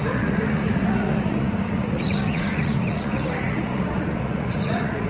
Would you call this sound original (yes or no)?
no